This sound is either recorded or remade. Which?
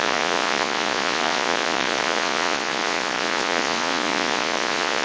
remade